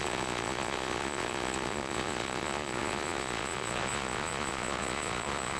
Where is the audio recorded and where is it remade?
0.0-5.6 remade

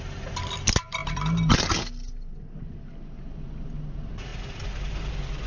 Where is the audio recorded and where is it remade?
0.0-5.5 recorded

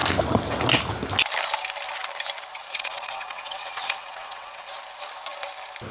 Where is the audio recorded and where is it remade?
0.0-2.6 recorded; 2.6-4.7 remade; 4.7-5.9 recorded